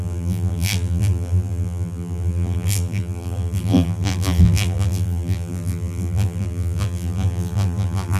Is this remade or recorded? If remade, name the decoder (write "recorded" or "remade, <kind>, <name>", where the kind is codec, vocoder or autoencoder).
remade, vocoder, BigVGAN v2